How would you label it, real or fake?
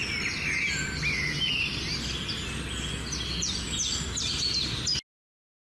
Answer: real